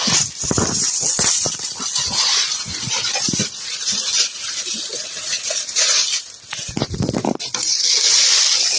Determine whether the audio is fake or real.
real